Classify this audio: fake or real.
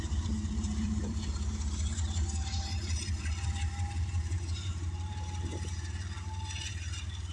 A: fake